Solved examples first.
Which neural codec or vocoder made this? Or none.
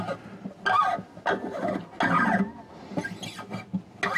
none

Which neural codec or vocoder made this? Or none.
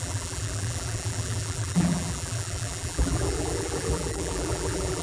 vocoder, BigVGAN v2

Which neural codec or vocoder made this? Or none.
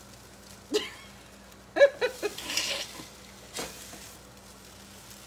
none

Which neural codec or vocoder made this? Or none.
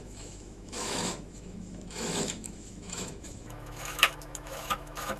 autoencoder, DAC-VAE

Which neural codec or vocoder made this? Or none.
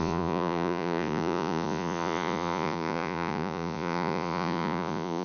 vocoder, Vocos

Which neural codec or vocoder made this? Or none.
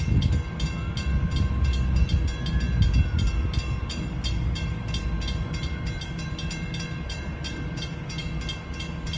none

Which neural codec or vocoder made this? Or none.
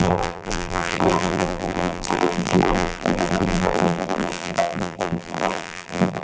vocoder, BigVGAN v2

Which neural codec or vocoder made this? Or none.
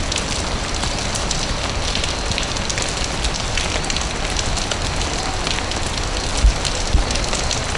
none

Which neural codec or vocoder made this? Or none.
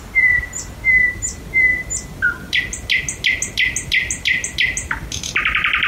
none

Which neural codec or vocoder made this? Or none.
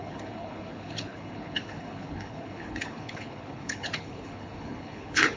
codec, HILCodec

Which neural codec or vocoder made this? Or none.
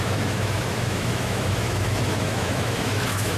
autoencoder, DAC-VAE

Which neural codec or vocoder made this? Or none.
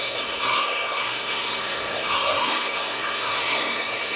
codec, SNAC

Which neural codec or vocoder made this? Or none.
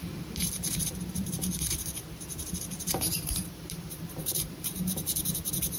vocoder, BigVGAN v2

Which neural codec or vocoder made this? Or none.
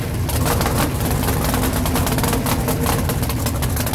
none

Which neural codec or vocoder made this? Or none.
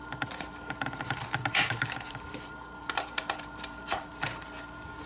vocoder, BigVGAN v2